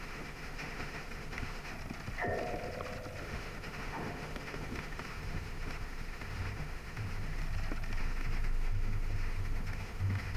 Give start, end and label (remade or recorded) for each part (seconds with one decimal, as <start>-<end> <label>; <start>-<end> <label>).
0.0-1.7 remade; 1.7-3.2 recorded; 3.2-7.4 remade; 7.4-8.0 recorded; 8.0-10.4 remade